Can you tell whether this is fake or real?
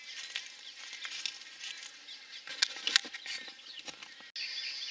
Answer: real